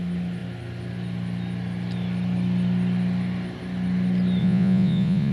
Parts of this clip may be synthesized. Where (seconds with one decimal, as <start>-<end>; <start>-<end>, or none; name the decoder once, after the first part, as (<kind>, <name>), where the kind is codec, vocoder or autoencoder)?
4.4-5.3 (vocoder, Vocos)